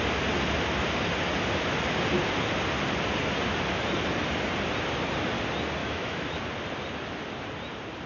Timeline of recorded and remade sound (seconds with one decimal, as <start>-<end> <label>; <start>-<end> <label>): 0.0-5.8 recorded; 5.8-6.4 remade; 6.4-8.1 recorded